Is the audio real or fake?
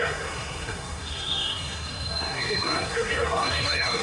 fake